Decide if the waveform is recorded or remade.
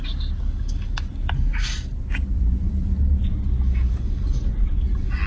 recorded